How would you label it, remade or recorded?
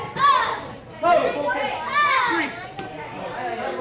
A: recorded